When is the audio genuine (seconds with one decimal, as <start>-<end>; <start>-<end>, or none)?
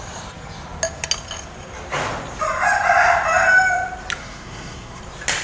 0.0-4.2; 5.0-5.4